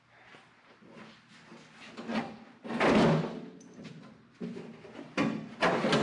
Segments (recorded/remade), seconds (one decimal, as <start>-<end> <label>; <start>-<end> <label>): 0.0-6.0 recorded